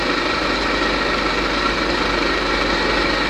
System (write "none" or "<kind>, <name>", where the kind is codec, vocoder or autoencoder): none